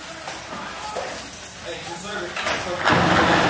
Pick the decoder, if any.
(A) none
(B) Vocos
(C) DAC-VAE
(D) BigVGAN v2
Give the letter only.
A